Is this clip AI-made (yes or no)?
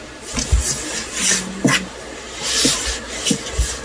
no